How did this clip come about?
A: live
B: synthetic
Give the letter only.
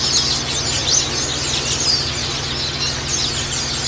A